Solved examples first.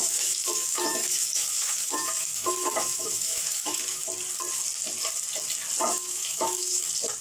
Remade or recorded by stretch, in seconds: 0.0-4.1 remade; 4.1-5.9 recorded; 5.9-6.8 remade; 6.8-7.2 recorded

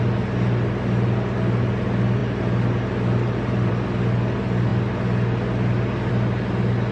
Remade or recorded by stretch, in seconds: 0.0-6.9 recorded